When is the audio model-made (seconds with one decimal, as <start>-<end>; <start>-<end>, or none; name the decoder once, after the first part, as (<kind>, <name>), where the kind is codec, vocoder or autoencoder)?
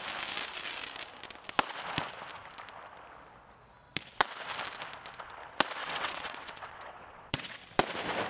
5.8-7.6 (vocoder, WaveNeXt)